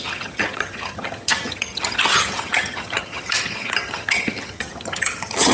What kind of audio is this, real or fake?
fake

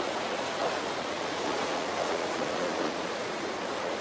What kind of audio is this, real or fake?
fake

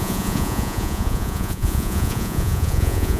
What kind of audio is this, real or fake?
fake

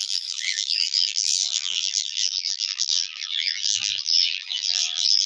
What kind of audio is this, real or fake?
fake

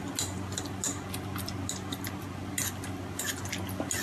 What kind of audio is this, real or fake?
real